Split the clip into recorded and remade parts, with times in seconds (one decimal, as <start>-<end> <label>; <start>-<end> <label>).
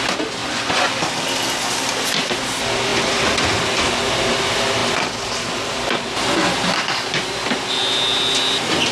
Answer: 0.0-0.4 recorded; 0.4-0.9 remade; 0.9-8.9 recorded